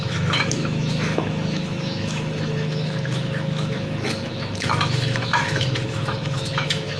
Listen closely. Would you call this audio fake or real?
fake